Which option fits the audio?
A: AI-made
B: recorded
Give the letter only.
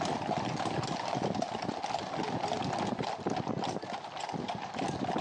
B